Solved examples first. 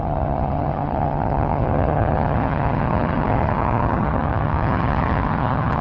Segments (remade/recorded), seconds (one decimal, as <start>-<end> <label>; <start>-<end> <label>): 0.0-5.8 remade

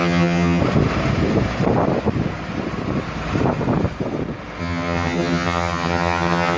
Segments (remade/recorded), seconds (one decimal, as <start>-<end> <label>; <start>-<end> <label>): 0.0-0.6 remade; 0.6-4.6 recorded; 4.6-6.6 remade

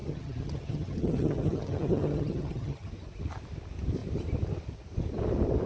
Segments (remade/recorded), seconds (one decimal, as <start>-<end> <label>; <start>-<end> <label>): 0.0-2.9 remade; 2.9-5.7 recorded

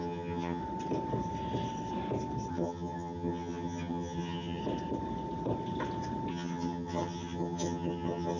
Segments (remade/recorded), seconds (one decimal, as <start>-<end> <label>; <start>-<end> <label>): 0.0-0.6 remade; 0.6-2.5 recorded; 2.5-4.6 remade; 4.6-6.3 recorded; 6.3-8.4 remade

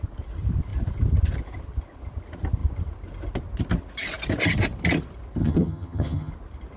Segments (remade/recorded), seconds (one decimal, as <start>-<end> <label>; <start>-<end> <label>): 0.0-5.4 recorded; 5.4-6.3 remade; 6.3-6.8 recorded

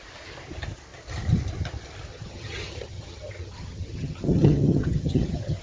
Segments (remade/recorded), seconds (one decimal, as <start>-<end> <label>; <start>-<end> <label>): 0.0-2.1 recorded; 2.1-5.6 remade

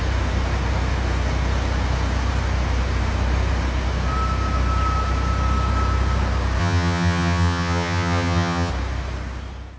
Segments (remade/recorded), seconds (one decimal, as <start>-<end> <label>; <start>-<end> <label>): 0.0-6.6 recorded; 6.6-8.7 remade; 8.7-9.8 recorded